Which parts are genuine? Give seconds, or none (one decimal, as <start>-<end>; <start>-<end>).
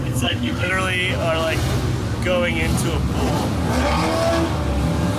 0.7-5.2